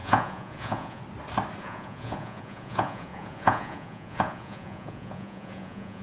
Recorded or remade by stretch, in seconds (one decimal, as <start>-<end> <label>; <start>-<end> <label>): 0.0-1.0 remade; 1.0-1.6 recorded; 1.6-6.0 remade